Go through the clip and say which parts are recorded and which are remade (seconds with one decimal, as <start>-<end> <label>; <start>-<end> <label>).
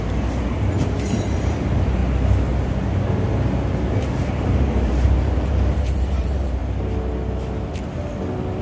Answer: 0.0-2.0 remade; 2.0-4.2 recorded; 4.2-6.6 remade; 6.6-8.6 recorded